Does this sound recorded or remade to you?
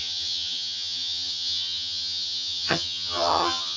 remade